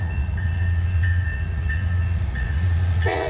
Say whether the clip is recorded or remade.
remade